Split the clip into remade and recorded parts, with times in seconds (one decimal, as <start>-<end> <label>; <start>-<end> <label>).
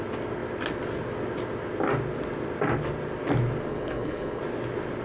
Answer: 0.0-3.7 recorded; 3.7-4.4 remade; 4.4-5.0 recorded